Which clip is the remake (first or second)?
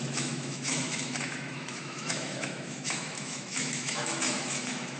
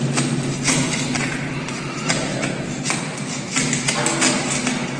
first